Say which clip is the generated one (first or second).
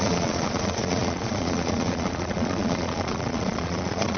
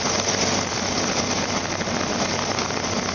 first